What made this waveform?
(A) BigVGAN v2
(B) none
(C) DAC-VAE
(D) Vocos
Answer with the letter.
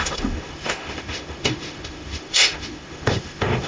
C